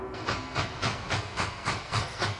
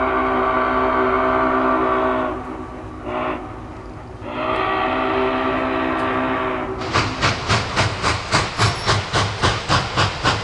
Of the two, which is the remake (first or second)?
first